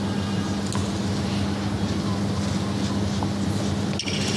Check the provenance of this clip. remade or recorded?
recorded